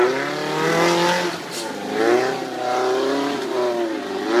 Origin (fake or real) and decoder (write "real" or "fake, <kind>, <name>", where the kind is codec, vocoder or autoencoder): real